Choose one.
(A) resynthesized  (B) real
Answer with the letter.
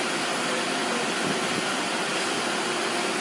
B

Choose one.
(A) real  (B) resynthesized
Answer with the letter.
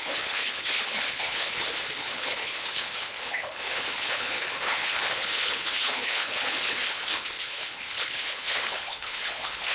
B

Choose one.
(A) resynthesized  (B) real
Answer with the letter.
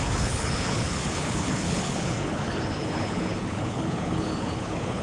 A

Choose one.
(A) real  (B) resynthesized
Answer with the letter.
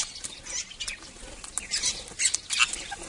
A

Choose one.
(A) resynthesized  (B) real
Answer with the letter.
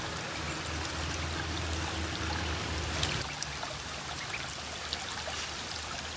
B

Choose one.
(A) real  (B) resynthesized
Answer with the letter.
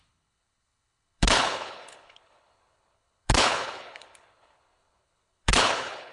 B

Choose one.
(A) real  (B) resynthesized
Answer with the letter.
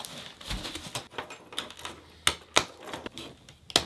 A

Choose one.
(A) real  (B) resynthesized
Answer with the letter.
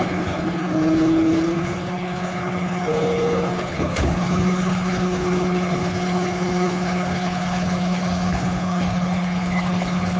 B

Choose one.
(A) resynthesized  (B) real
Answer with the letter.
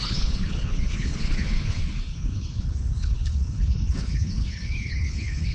A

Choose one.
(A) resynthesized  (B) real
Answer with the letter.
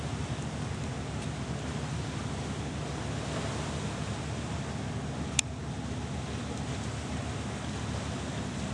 B